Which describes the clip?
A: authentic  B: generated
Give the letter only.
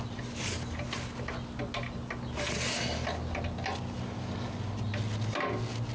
A